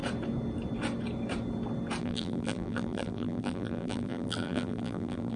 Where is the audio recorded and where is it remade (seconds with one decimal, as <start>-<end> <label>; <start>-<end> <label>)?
0.0-2.0 recorded; 2.0-5.4 remade